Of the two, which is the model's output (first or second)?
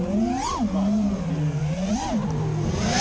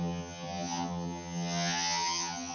second